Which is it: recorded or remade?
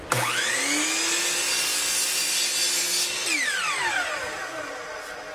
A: recorded